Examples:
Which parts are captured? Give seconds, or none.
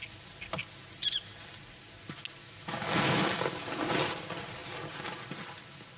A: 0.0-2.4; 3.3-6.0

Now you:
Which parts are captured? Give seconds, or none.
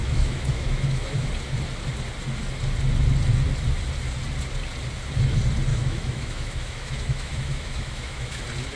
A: 1.3-5.7; 8.4-8.8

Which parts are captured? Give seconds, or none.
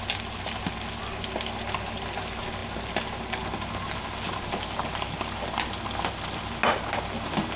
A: 0.0-7.6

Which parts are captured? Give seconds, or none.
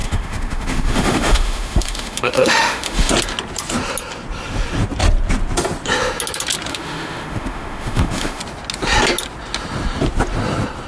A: 3.1-6.7; 8.4-10.9